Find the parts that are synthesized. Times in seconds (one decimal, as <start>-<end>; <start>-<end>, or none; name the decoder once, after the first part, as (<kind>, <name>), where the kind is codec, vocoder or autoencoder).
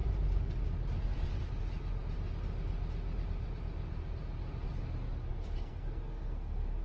5.3-6.8 (codec, SNAC)